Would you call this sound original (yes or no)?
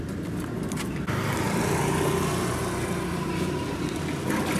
yes